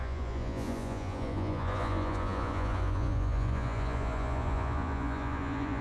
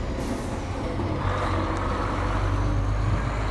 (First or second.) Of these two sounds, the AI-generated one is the first